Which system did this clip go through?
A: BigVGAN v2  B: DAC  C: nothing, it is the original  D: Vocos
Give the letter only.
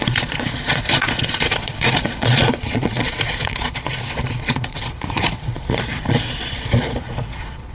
D